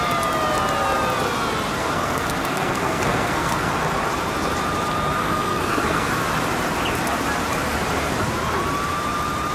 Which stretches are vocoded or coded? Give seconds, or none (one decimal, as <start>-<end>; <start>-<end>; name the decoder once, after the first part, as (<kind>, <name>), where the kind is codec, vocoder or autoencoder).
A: 1.8-3.7 (codec, SNAC); 5.2-6.1